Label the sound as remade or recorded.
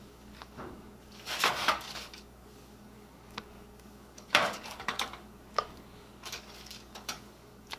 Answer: remade